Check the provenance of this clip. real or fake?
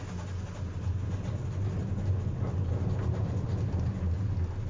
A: real